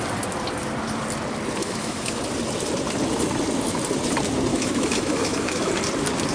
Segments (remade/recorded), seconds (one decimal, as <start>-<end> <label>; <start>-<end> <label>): 0.0-1.6 recorded; 1.6-2.2 remade; 2.2-4.5 recorded; 4.5-5.7 remade; 5.7-6.3 recorded